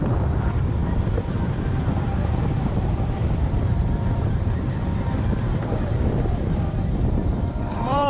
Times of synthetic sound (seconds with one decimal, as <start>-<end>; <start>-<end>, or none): 0.0-8.1